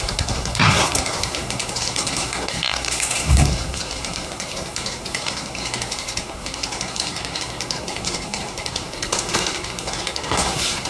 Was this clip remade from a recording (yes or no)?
yes